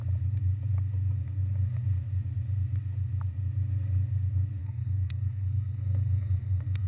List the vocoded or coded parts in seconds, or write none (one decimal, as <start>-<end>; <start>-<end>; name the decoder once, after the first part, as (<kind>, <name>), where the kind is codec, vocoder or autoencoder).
4.6-6.9 (codec, SNAC)